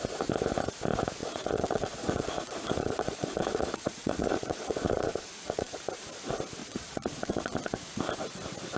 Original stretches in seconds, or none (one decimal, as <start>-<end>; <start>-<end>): 0.0-1.2; 5.8-6.6; 8.0-8.8